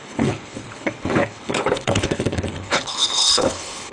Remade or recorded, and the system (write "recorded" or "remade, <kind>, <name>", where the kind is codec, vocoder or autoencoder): remade, codec, HILCodec